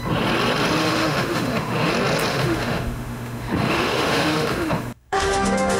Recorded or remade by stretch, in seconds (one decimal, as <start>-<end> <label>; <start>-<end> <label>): 0.0-0.8 recorded; 0.8-1.9 remade; 1.9-2.3 recorded; 2.3-5.8 remade